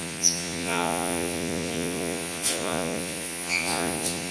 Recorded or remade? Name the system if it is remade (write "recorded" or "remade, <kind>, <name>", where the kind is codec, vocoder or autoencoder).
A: remade, vocoder, Vocos